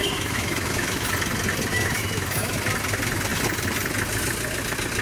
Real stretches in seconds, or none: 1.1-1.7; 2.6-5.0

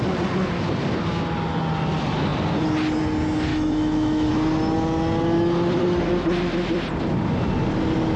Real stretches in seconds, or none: 0.0-3.5; 4.3-8.2

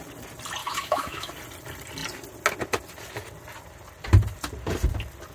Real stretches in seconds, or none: 0.0-0.6; 1.3-5.3

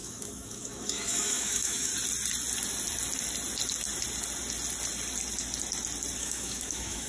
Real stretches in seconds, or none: 1.9-6.2

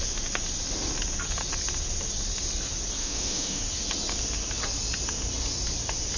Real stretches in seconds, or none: 0.0-3.0; 3.6-6.2